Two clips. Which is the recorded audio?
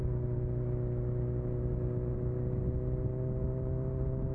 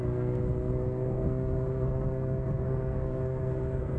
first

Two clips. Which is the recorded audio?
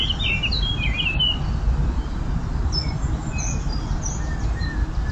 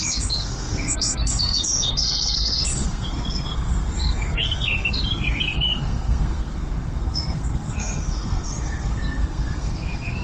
first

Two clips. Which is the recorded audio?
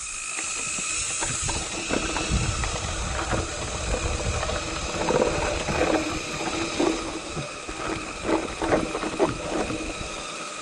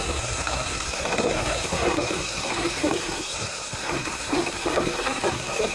first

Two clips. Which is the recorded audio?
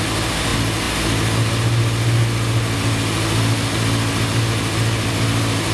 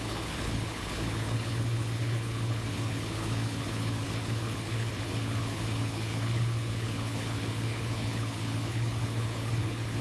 first